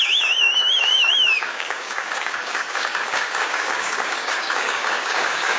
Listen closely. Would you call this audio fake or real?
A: fake